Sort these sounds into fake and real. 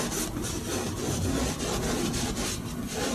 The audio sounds real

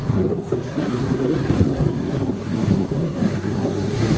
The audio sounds fake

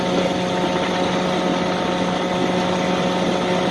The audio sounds real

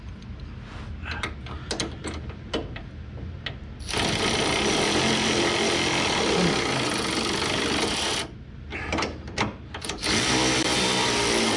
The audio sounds real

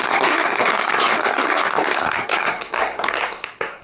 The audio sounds fake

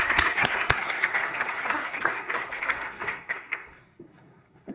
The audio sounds fake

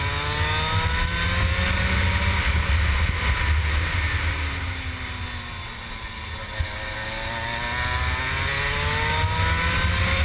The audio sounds real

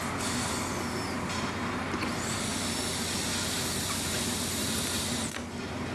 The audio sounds real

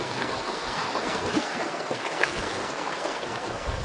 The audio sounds fake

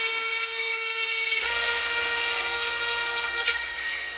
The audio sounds fake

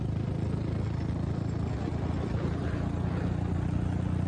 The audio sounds real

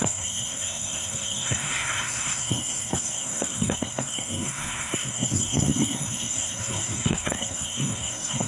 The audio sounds fake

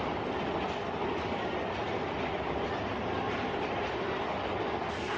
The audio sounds real